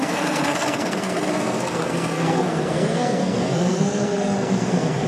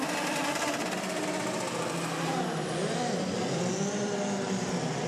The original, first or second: second